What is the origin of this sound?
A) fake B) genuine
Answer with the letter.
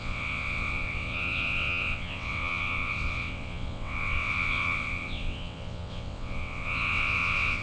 A